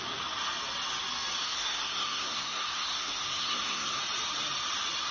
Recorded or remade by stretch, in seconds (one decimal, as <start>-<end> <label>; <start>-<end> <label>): 0.0-1.4 recorded; 1.4-4.0 remade; 4.0-5.1 recorded